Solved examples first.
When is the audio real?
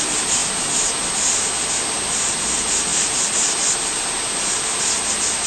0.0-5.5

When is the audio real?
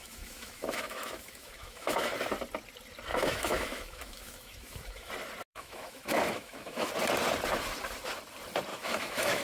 2.1-3.1; 5.1-5.5; 6.9-8.7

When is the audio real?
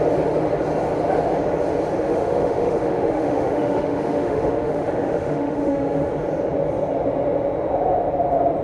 0.0-2.0; 6.1-8.6